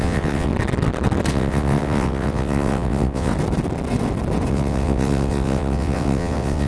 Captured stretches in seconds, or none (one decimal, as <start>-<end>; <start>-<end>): 0.5-1.3; 3.3-4.5